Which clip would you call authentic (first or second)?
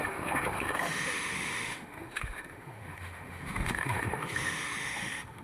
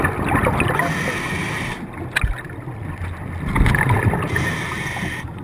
second